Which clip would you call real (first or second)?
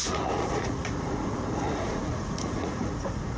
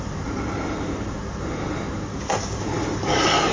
second